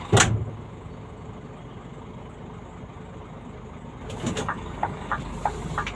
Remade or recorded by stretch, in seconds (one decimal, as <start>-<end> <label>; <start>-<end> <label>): 0.0-4.4 recorded; 4.4-5.2 remade; 5.2-5.9 recorded